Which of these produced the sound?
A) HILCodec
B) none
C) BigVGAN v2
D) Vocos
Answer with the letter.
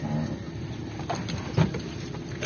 B